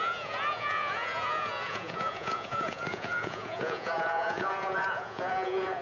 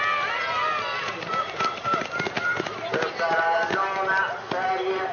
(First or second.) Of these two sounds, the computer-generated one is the first